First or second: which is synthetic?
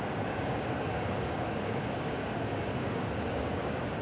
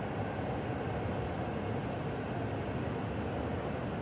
first